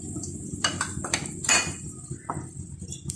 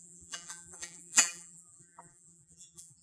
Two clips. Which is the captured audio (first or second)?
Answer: first